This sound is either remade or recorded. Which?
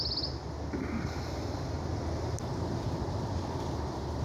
recorded